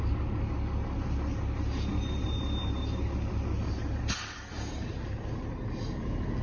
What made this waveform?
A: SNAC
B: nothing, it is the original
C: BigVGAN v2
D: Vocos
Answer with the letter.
B